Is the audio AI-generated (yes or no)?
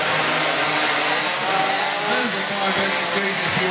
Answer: no